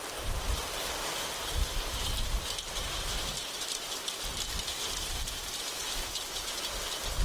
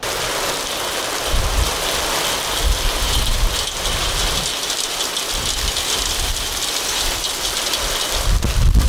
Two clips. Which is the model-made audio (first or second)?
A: first